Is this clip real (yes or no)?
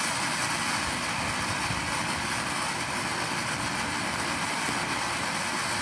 yes